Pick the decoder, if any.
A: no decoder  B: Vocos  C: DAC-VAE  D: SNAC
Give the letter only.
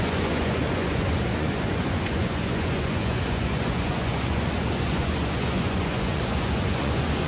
B